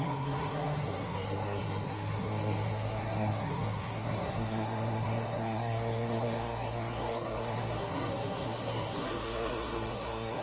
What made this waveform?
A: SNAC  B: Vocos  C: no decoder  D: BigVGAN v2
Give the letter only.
A